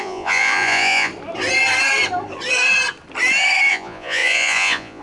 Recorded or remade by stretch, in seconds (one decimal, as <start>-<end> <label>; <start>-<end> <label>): 0.0-1.1 remade; 1.1-3.7 recorded; 3.7-5.0 remade